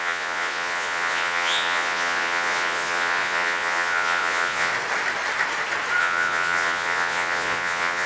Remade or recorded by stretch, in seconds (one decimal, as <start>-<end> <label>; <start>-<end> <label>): 0.0-4.7 remade; 4.7-6.0 recorded; 6.0-8.1 remade